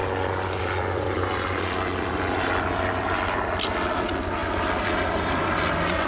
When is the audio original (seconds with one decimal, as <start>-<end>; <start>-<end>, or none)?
0.0-0.6